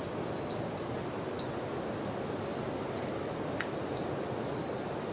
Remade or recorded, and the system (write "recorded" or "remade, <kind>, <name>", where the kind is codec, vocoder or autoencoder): recorded